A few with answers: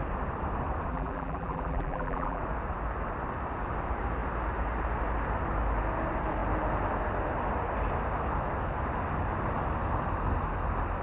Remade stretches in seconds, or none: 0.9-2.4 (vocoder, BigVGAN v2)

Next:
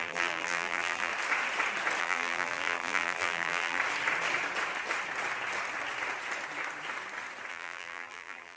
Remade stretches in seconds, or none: 0.0-1.1 (vocoder, BigVGAN v2); 2.0-3.8; 7.5-8.6

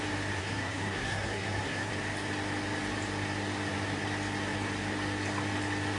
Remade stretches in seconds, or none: 0.4-1.9 (codec, SNAC)

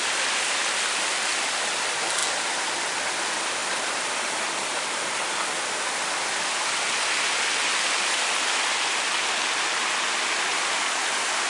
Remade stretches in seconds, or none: none

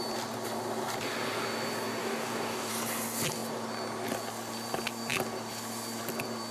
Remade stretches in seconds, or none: 2.0-2.7 (codec, DAC)